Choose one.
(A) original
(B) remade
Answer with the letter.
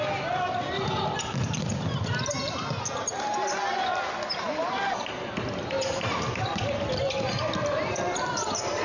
A